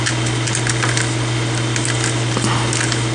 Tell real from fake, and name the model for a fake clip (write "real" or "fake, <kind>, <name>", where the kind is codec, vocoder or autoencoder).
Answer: real